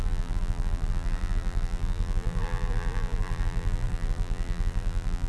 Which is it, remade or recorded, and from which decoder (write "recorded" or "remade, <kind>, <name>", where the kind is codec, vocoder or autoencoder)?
remade, vocoder, BigVGAN v2